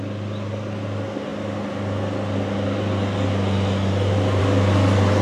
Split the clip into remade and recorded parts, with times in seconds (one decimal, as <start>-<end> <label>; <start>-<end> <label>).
0.0-5.2 recorded